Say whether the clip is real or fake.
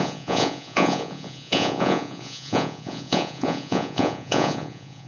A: fake